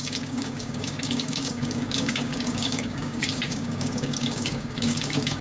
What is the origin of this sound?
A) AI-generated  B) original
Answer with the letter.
A